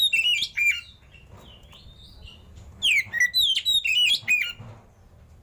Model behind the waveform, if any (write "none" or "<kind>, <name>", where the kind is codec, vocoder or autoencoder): none